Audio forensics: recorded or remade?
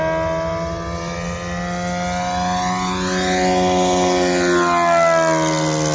recorded